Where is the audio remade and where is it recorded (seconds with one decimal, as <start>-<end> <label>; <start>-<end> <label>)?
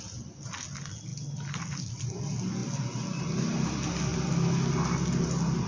0.0-5.7 recorded